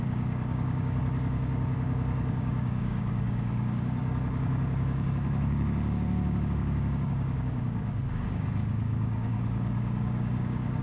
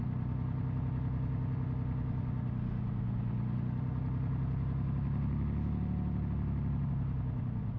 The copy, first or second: first